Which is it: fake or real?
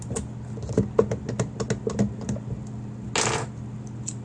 real